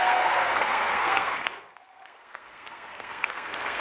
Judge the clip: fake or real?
fake